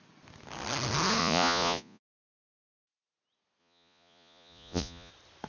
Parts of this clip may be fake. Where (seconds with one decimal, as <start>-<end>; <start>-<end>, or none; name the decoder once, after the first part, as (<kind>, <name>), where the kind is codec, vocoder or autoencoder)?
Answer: 1.2-2.2 (vocoder, Vocos); 3.6-5.1